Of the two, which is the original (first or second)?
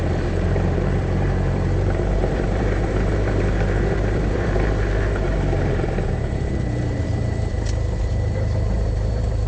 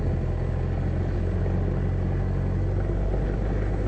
second